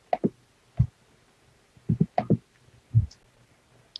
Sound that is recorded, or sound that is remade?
recorded